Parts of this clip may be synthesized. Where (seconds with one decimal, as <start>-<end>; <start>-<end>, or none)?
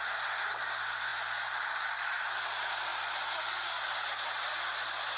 none